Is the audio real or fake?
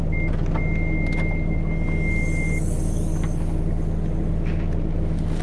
real